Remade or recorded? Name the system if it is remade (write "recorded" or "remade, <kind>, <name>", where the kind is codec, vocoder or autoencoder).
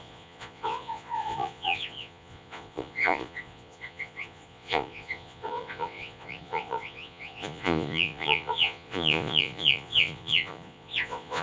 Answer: remade, vocoder, Vocos